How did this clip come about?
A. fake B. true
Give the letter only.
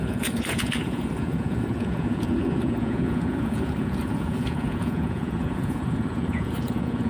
A